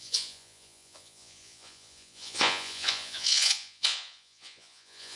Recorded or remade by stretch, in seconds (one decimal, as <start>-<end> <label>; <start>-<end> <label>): 0.0-5.2 remade